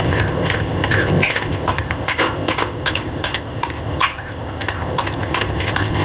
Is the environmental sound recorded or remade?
remade